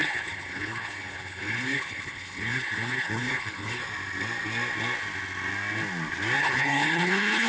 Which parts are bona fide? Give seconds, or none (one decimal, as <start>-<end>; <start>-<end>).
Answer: 3.8-6.4